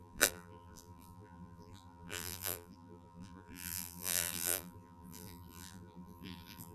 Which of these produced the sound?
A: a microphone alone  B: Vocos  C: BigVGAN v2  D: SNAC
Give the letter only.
C